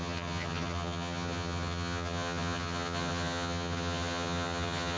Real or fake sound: fake